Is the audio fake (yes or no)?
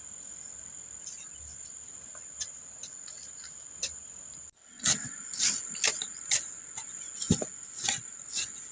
no